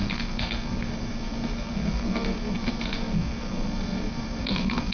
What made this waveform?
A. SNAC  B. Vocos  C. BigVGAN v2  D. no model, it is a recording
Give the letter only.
A